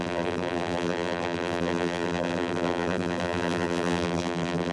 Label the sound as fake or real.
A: fake